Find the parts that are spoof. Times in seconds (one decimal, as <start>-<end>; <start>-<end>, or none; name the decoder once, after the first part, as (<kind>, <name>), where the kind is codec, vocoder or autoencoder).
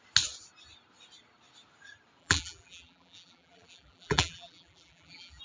2.2-5.4 (vocoder, BigVGAN v2)